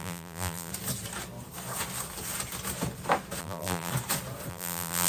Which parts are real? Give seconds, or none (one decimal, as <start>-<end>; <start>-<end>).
0.7-3.4; 3.9-4.5